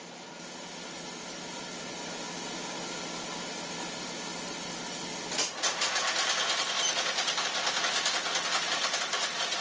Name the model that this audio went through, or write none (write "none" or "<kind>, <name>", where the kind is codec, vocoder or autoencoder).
none